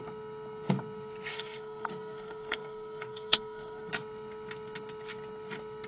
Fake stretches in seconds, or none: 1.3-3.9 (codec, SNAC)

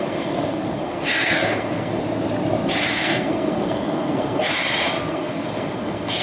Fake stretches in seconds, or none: 0.0-2.0 (codec, SNAC); 2.9-4.5; 5.1-6.2

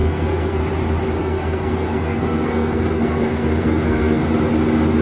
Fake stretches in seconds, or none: 0.0-0.6 (codec, SNAC); 1.2-4.2

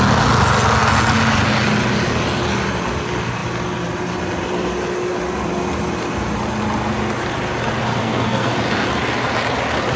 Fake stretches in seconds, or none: 7.9-8.5 (codec, SNAC)

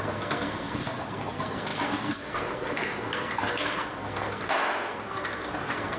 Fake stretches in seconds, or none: 0.0-6.0 (codec, SNAC)

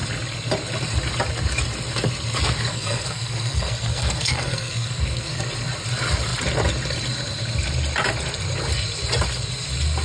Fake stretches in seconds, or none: 2.7-5.4 (codec, SNAC)